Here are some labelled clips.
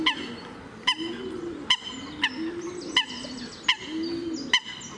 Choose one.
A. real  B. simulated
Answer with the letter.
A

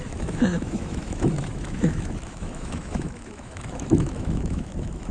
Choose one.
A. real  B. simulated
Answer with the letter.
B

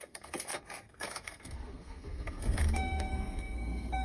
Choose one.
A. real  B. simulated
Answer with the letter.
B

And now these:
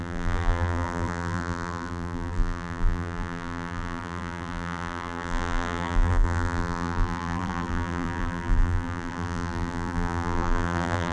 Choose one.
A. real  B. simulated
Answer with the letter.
B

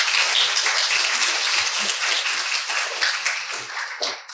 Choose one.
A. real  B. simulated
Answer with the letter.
A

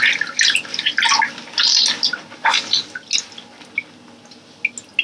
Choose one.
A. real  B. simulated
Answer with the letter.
A